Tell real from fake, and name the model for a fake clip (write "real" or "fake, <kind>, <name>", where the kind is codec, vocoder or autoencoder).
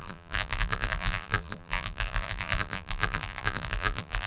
fake, vocoder, BigVGAN v2